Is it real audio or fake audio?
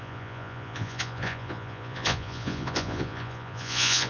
fake